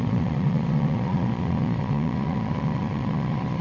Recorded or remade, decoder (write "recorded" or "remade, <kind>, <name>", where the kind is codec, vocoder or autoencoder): remade, vocoder, Vocos